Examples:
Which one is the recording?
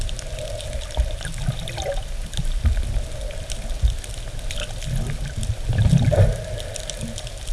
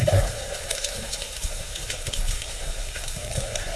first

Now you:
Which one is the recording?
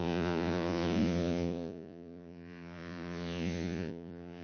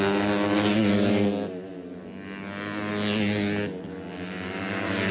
second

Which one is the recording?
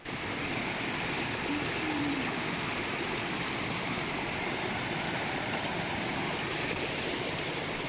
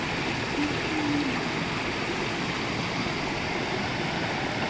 second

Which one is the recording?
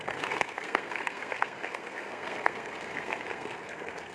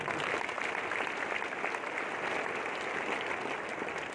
second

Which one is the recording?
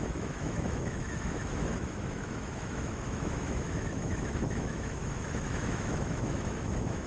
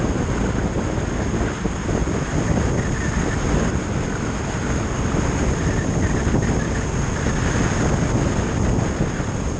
second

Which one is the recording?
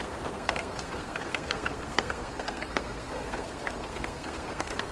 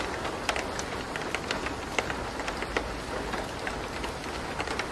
second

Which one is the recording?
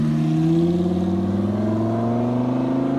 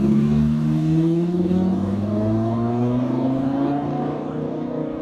first